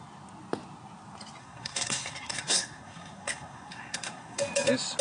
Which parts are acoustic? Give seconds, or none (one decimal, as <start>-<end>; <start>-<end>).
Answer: 0.0-1.4; 4.4-5.0